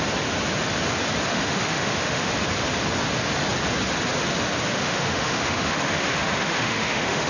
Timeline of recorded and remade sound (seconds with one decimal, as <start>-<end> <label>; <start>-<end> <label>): 0.0-1.3 recorded; 1.3-2.3 remade; 2.3-4.7 recorded; 4.7-7.3 remade